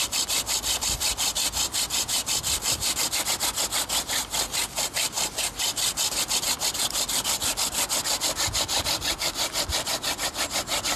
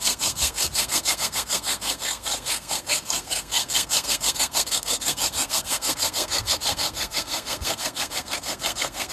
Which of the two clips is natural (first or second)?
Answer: first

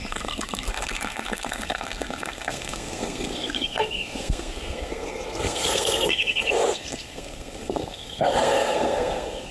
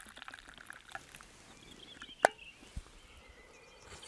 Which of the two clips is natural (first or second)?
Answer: second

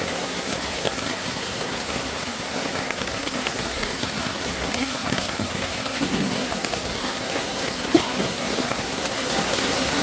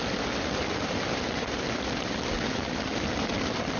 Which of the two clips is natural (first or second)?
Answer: second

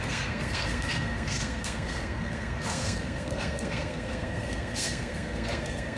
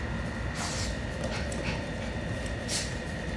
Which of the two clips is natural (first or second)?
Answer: second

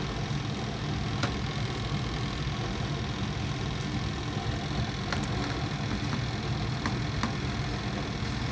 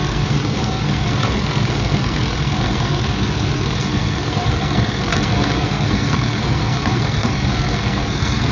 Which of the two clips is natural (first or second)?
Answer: first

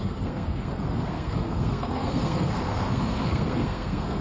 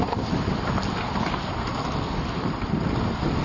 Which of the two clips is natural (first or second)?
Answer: second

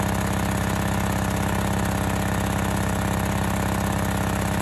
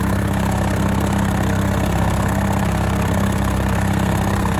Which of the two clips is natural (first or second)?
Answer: first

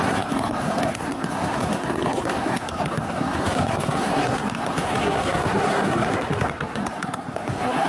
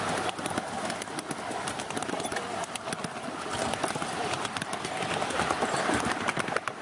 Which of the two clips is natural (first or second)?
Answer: second